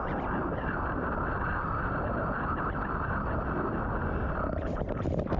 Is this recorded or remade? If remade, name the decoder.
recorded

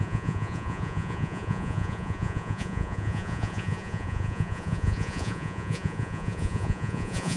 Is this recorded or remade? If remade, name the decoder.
remade, vocoder, Vocos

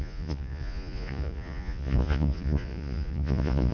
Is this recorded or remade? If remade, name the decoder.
remade, vocoder, Vocos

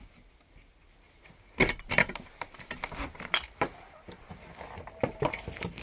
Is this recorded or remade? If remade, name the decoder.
recorded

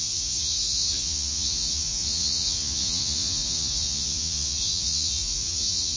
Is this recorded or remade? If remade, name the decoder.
remade, vocoder, Vocos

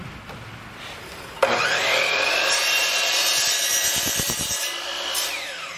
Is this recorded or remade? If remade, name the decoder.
recorded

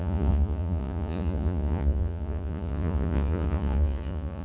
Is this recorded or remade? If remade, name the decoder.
remade, vocoder, Vocos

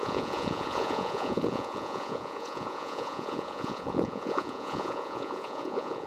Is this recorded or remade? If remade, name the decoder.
remade, vocoder, Vocos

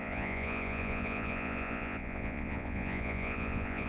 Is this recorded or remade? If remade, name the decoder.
remade, vocoder, Vocos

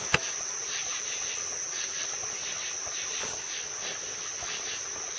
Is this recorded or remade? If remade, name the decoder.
recorded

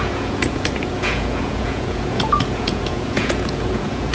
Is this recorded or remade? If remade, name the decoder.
remade, vocoder, Vocos